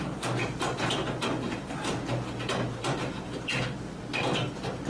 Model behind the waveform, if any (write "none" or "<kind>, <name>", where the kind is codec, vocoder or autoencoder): none